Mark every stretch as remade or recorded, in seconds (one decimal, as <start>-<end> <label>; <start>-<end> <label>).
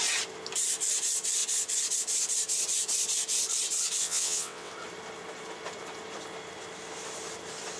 0.0-4.0 recorded; 4.0-4.7 remade; 4.7-7.8 recorded